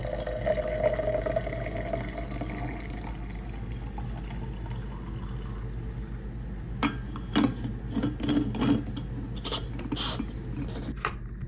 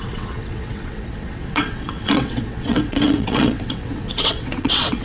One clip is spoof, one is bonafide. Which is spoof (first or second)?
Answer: second